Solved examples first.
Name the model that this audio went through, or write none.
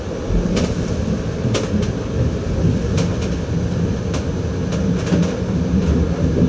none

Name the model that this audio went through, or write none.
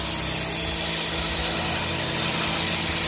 none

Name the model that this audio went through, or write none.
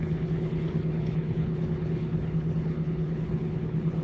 codec, HILCodec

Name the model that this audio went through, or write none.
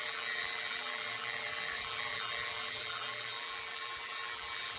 vocoder, BigVGAN v2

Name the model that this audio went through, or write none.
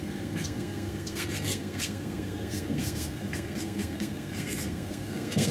codec, SNAC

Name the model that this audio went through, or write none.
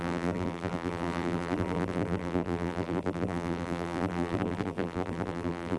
vocoder, BigVGAN v2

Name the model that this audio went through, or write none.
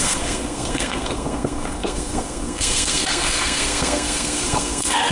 codec, SNAC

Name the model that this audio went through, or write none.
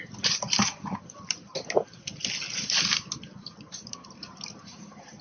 none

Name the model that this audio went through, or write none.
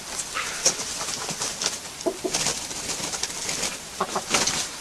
none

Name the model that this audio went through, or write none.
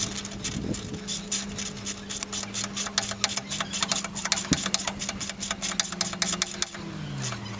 none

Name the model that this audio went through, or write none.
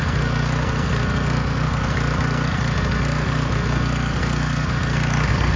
codec, SNAC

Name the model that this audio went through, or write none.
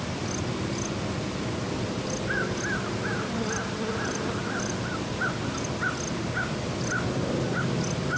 none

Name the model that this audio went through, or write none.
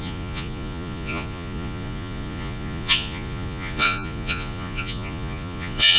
vocoder, Vocos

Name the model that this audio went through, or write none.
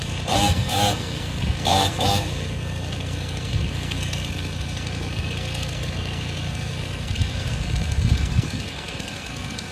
codec, SNAC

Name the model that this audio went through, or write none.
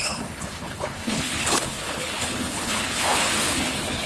codec, HILCodec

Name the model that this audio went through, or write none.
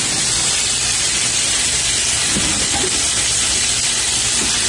vocoder, BigVGAN v2